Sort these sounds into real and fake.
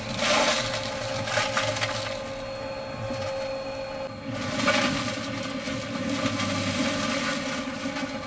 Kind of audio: real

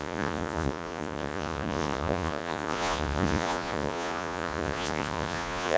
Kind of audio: fake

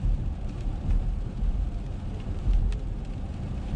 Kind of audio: fake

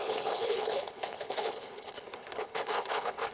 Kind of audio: fake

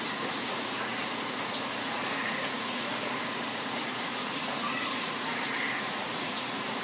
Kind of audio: fake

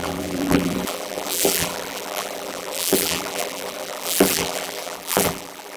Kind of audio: fake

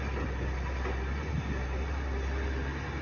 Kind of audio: real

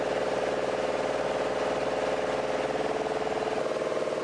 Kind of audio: real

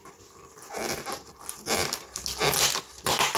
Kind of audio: real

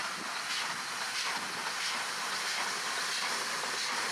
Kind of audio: real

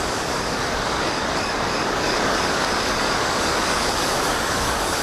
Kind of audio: fake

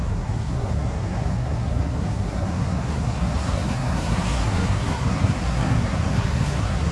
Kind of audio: fake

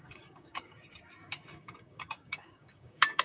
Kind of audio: fake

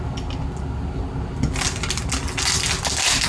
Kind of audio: real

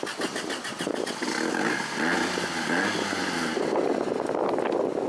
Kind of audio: real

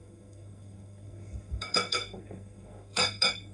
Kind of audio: fake